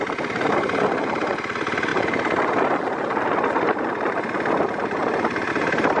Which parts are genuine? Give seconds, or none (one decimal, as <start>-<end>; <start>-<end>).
none